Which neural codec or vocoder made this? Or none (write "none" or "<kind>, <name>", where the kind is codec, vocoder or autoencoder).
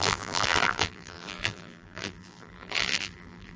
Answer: vocoder, BigVGAN v2